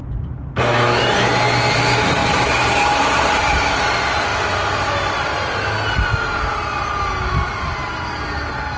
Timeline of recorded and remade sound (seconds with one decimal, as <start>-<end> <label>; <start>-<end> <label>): 0.0-8.8 recorded